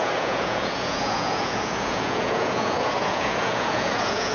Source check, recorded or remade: remade